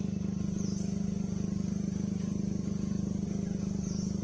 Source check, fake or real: real